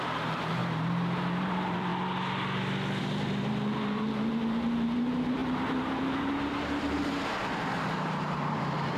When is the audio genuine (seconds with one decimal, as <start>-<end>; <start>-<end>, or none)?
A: 1.9-3.0